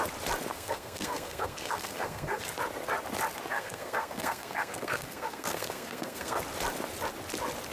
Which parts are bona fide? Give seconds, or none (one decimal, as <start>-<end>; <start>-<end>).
0.0-0.5; 2.5-3.5; 6.4-7.7